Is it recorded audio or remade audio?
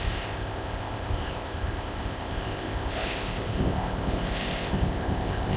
remade